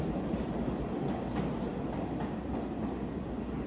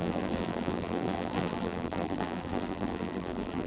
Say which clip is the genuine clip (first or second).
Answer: first